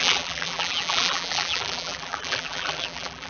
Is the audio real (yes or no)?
no